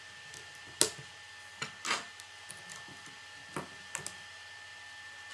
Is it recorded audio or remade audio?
recorded